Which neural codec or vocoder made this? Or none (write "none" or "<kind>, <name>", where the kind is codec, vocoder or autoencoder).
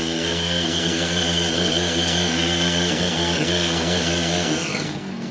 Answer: codec, SNAC